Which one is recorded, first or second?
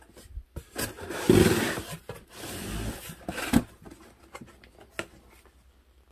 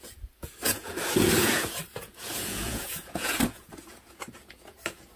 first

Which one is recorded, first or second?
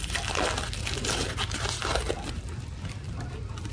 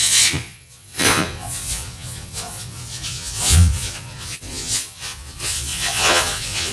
first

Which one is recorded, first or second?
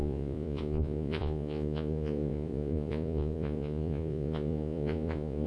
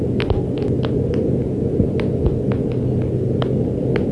second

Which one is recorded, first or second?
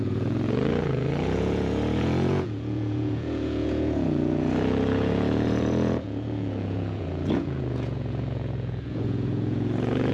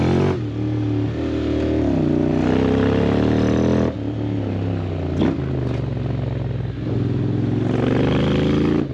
second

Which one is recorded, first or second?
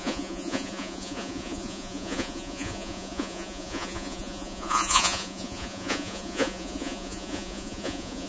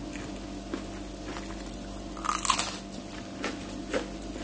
second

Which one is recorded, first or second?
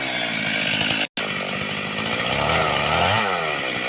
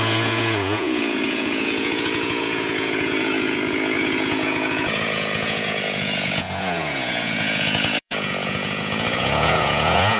first